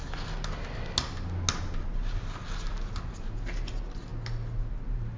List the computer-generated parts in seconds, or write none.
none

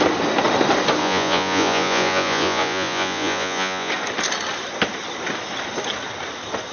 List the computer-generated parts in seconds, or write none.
1.0-3.9 (vocoder, Vocos)